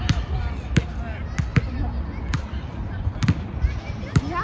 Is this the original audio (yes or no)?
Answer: yes